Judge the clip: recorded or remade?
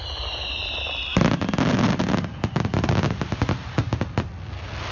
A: recorded